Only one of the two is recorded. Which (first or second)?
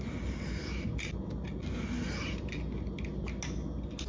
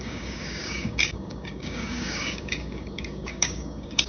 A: first